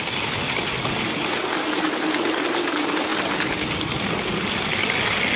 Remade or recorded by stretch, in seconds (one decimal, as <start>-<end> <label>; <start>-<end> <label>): 0.0-5.4 recorded